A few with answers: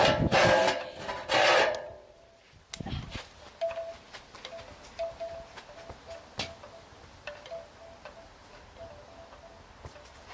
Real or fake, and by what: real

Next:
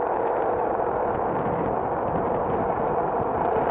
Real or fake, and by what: real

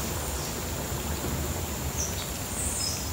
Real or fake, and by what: real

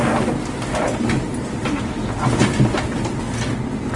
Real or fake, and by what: real